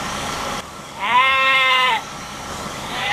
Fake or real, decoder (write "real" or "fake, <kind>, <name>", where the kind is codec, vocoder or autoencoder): fake, codec, DAC